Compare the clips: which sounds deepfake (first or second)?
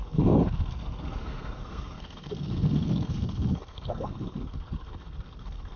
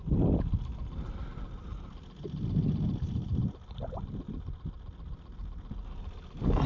first